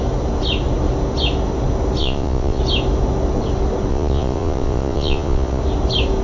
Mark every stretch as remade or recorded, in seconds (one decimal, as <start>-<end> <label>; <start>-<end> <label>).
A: 0.0-2.0 recorded; 2.0-2.6 remade; 2.6-3.9 recorded; 3.9-5.6 remade; 5.6-6.2 recorded